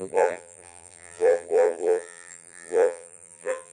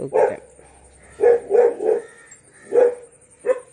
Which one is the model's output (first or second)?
first